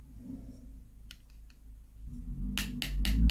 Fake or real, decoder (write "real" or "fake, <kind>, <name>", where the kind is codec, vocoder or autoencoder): real